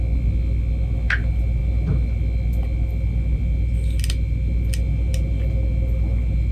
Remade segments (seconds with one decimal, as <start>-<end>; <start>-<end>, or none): none